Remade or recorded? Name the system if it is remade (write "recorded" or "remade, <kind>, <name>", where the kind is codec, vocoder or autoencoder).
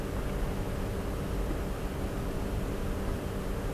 recorded